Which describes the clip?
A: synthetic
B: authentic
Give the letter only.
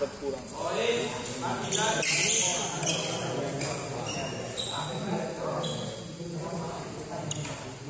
B